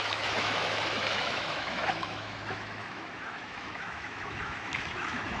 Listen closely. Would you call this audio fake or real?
fake